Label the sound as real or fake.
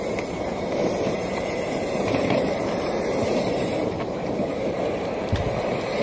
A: fake